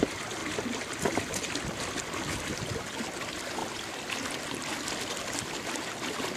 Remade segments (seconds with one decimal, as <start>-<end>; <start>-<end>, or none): 0.4-2.5